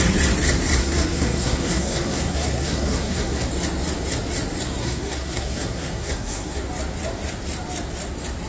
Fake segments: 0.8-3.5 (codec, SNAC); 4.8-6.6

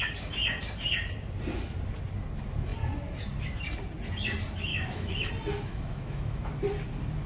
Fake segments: 4.7-5.3 (autoencoder, DAC-VAE); 5.7-6.6

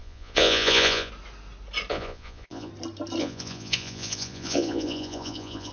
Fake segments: 0.0-1.1 (vocoder, Vocos); 1.9-2.7; 3.2-5.7

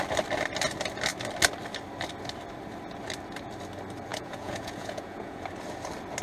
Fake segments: 4.1-5.4 (vocoder, Vocos)

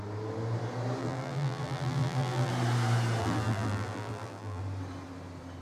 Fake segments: 1.0-2.5 (vocoder, BigVGAN v2); 3.2-4.6

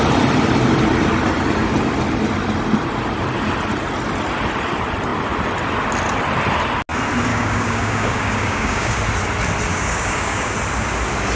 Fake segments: 7.3-9.0 (codec, DAC); 9.7-10.5

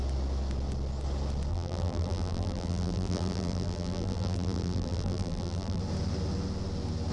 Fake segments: 1.5-5.8 (vocoder, BigVGAN v2)